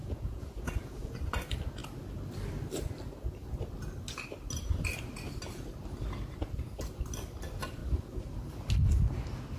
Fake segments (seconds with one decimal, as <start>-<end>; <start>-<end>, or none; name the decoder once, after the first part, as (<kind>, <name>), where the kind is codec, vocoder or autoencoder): 0.0-1.2 (vocoder, Vocos)